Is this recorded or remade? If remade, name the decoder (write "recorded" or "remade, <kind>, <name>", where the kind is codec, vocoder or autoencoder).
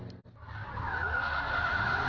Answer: recorded